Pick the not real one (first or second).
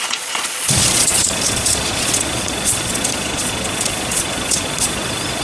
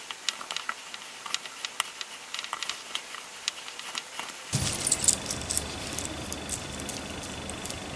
first